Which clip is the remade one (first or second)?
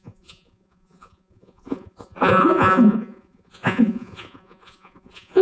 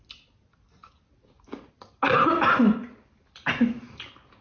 first